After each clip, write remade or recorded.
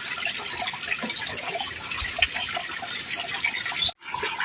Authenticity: recorded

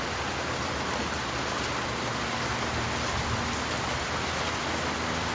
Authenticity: recorded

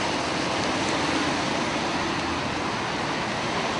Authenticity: recorded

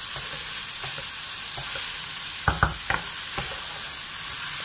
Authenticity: recorded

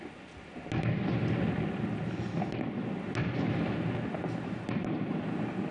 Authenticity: recorded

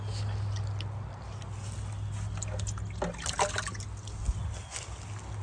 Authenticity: recorded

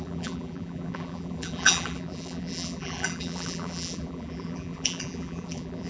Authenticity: remade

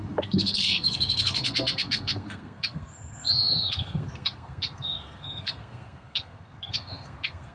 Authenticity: remade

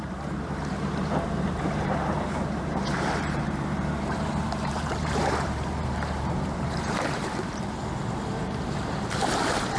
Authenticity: remade